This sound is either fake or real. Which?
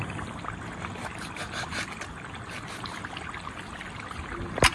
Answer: real